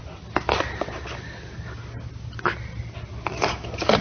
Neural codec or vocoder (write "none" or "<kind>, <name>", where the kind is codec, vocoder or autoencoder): none